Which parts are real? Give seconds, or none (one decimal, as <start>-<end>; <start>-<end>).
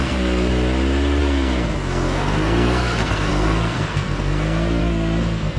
0.5-1.2